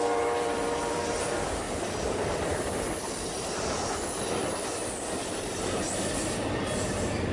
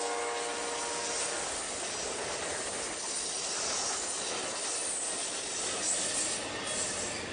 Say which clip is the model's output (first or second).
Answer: first